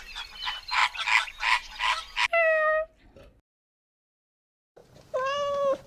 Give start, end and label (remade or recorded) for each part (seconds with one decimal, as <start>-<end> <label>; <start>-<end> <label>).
0.0-0.8 remade; 0.8-4.1 recorded; 4.1-4.8 remade; 4.8-5.9 recorded